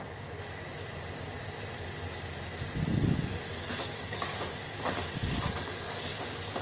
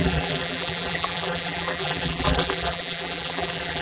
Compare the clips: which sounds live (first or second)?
first